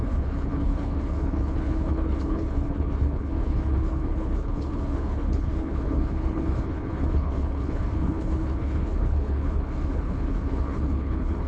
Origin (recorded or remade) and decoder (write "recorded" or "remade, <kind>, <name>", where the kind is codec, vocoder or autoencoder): remade, codec, HILCodec